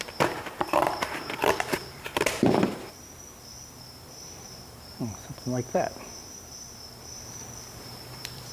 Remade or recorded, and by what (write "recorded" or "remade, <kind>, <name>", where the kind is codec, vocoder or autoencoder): remade, vocoder, BigVGAN v2